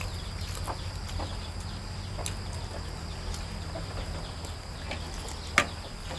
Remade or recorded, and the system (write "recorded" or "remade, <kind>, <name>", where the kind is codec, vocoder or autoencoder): recorded